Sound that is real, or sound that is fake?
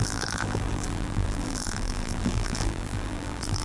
fake